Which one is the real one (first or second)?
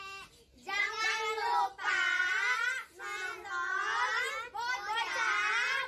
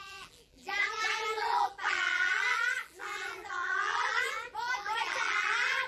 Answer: first